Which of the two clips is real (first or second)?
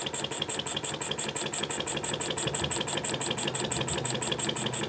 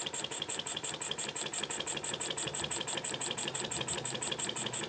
first